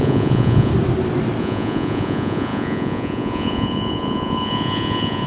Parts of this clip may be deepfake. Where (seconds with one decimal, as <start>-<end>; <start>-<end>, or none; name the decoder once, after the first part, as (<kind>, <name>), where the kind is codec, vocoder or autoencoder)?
0.0-0.7 (vocoder, Vocos); 1.4-5.3

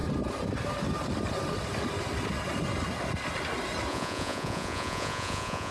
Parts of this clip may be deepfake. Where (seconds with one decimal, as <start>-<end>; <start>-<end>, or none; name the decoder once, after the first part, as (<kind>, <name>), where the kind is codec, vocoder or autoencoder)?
3.9-5.7 (vocoder, Vocos)

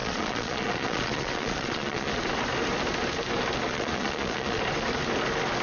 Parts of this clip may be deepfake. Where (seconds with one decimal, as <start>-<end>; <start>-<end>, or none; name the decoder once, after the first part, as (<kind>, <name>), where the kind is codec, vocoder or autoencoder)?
0.0-2.1 (vocoder, Vocos); 3.7-4.6

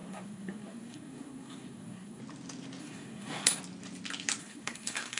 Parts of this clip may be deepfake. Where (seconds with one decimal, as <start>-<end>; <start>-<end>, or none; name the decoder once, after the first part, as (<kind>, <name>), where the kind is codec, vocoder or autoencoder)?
0.0-2.2 (codec, SNAC); 2.8-3.6; 4.4-5.2

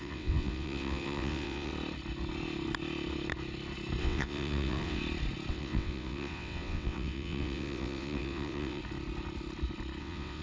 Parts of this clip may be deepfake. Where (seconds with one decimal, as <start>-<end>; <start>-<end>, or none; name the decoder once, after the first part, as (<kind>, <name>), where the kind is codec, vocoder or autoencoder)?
0.0-1.7 (vocoder, WaveNeXt); 4.0-5.0; 5.5-8.8; 10.0-10.4

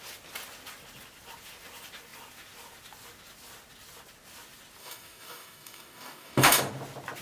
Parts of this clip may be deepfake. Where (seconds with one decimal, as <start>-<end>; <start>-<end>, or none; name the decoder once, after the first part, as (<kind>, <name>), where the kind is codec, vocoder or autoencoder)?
4.8-6.6 (codec, DAC)

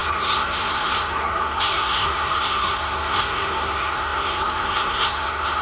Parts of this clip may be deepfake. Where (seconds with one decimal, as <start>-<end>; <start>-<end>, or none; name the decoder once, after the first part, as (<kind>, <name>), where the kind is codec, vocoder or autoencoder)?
0.0-5.6 (codec, SNAC)